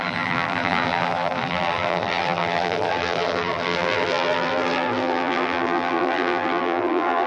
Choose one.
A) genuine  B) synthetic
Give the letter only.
B